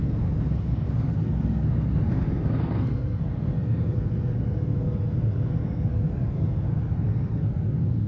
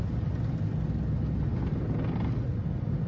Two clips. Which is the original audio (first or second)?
second